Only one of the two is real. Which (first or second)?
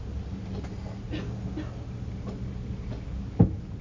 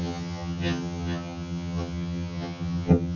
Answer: first